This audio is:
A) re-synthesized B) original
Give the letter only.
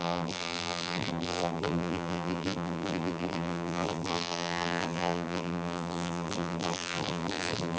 A